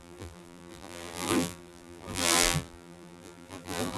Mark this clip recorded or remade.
remade